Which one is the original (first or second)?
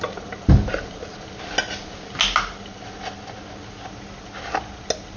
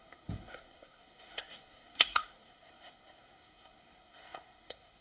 first